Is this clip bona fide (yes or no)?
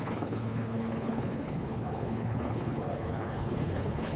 no